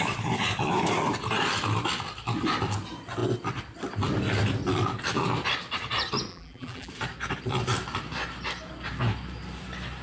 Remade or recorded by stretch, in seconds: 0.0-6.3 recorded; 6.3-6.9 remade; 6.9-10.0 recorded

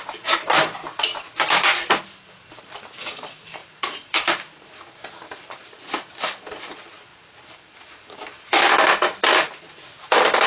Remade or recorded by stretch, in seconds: 0.0-1.1 remade; 1.1-2.6 recorded; 2.6-10.5 remade

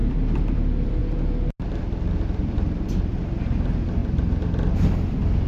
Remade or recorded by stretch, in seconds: 0.0-1.0 remade; 1.0-1.8 recorded; 1.8-4.0 remade; 4.0-4.5 recorded; 4.5-5.5 remade

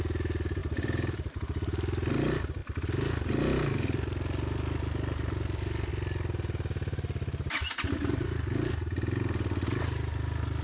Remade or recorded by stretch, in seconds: 0.0-0.6 recorded; 0.6-1.4 remade; 1.4-10.6 recorded

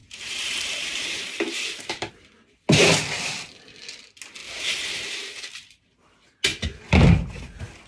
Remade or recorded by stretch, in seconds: 0.0-2.1 remade; 2.1-4.4 recorded; 4.4-5.4 remade; 5.4-7.9 recorded

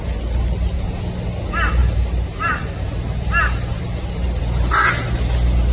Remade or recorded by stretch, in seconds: 0.0-1.8 recorded; 1.8-4.4 remade; 4.4-5.7 recorded

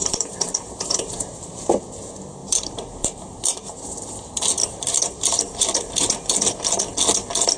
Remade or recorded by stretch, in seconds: 0.0-1.8 remade; 1.8-2.4 recorded; 2.4-4.0 remade; 4.0-4.6 recorded; 4.6-6.3 remade; 6.3-7.6 recorded

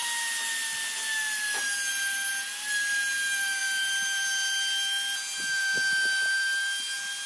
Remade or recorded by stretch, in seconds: 0.0-7.3 recorded